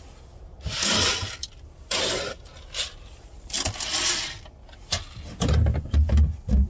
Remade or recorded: recorded